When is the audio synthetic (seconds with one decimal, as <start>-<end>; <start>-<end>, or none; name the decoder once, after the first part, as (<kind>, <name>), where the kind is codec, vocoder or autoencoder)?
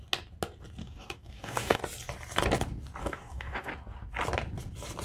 0.8-1.8 (codec, DAC); 3.0-3.7